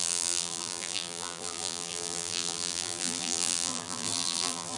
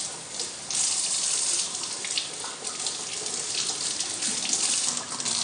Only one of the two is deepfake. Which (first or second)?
first